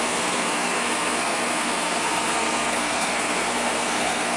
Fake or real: fake